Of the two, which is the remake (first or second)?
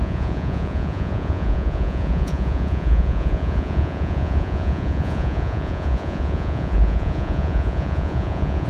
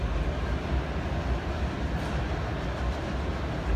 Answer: first